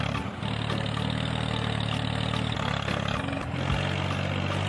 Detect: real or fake real